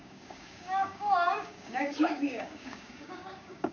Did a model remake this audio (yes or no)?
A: yes